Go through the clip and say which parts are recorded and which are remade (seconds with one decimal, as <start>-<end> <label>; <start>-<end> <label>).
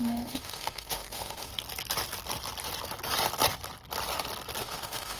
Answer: 0.0-1.5 remade; 1.5-4.6 recorded; 4.6-5.2 remade